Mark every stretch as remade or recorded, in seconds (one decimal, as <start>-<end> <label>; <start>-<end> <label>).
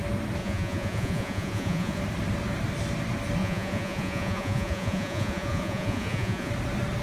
0.0-0.4 recorded; 0.4-2.0 remade; 2.0-3.4 recorded; 3.4-6.5 remade; 6.5-7.0 recorded